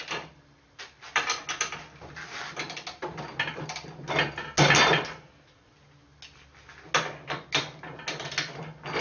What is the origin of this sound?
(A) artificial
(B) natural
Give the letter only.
B